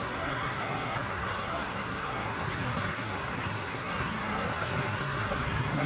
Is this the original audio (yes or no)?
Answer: no